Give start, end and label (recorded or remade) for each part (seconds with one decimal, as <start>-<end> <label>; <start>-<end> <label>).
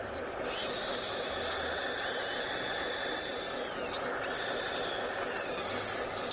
0.0-0.6 recorded; 0.6-1.4 remade; 1.4-6.3 recorded